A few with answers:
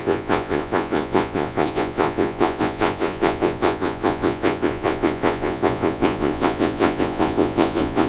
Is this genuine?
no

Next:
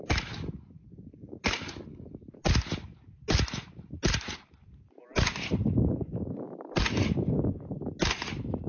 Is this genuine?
yes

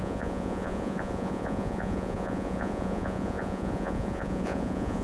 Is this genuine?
no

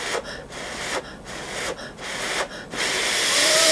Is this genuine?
yes